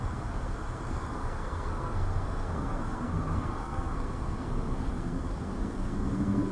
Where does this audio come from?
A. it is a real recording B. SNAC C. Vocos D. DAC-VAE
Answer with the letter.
B